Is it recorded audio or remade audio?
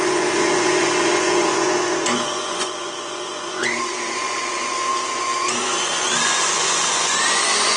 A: remade